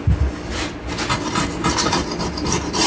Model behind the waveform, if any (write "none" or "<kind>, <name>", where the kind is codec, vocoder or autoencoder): none